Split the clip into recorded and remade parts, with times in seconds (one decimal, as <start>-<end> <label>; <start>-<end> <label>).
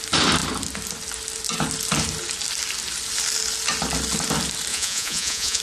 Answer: 0.0-4.7 recorded; 4.7-5.6 remade